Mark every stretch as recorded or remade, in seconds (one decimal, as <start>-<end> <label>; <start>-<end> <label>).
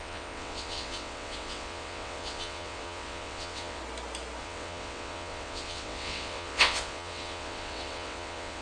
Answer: 0.0-3.8 remade; 3.8-4.4 recorded; 4.4-8.6 remade